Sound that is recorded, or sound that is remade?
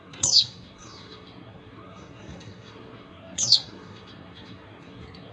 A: remade